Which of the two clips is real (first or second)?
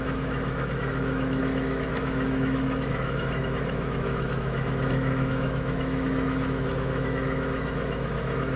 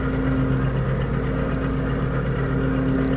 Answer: second